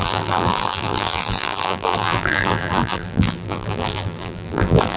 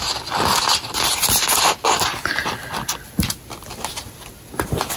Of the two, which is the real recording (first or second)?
second